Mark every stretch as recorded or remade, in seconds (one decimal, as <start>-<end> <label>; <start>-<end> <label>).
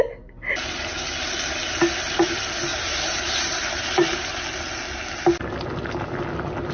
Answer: 0.0-2.7 recorded; 2.7-3.8 remade; 3.8-6.7 recorded